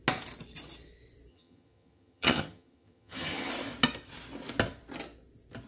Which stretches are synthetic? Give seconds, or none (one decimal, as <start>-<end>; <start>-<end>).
1.3-3.5